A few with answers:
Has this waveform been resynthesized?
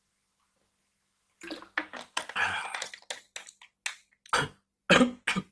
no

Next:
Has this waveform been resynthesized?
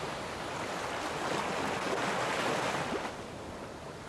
no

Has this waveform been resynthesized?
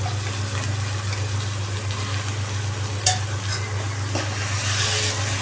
no